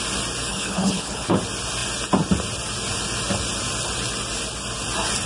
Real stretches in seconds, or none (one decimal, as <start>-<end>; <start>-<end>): 0.0-0.5; 1.4-5.3